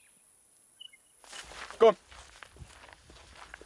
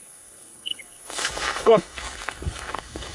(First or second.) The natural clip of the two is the first